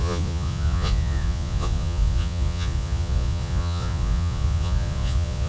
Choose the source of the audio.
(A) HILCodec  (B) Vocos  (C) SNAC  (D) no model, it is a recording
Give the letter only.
B